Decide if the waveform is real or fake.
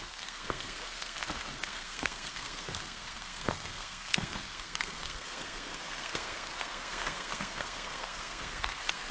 fake